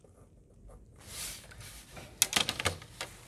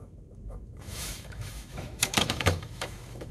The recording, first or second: first